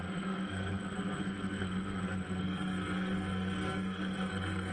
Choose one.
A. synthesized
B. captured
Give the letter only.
A